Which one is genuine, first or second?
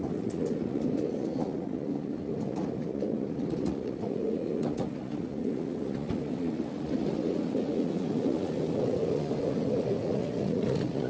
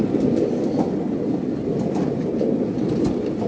second